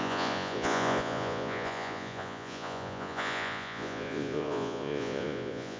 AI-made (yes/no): yes